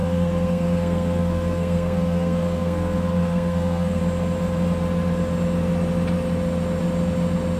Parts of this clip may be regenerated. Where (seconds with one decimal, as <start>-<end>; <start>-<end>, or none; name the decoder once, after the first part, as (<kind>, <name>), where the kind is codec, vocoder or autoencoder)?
0.0-4.0 (codec, SNAC)